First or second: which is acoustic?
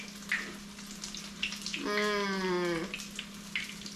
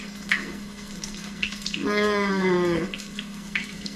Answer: first